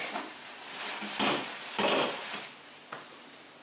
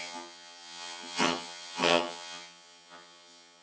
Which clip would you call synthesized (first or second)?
second